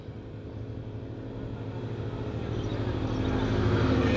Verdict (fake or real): real